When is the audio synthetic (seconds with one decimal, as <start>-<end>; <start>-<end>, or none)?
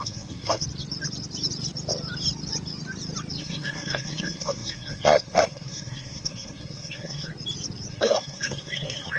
0.0-0.6; 3.4-7.3; 7.9-9.2